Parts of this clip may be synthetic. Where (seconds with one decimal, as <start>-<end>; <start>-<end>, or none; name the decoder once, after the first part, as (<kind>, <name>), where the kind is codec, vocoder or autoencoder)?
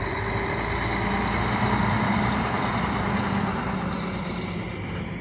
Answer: 2.1-5.2 (vocoder, BigVGAN v2)